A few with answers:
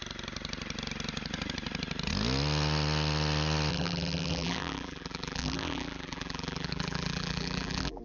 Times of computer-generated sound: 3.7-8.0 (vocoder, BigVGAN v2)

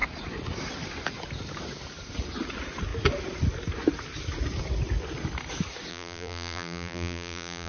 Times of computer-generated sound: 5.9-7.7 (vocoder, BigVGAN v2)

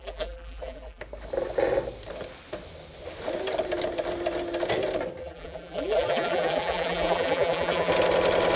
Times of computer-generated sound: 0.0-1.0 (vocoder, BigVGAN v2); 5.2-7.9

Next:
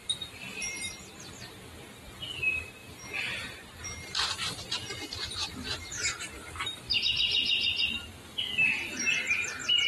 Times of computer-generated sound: 0.0-1.1 (vocoder, BigVGAN v2); 4.9-6.1